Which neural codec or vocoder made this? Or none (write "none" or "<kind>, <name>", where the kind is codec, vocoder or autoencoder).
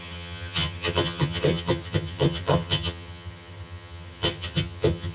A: vocoder, HiFi-GAN